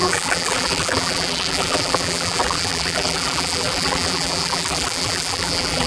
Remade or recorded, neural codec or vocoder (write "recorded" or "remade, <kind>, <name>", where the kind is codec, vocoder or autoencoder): remade, vocoder, BigVGAN v2